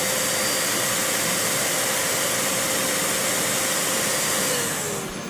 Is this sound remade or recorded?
recorded